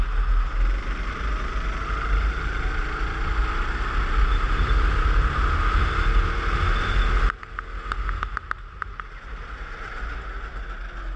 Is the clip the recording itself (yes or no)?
yes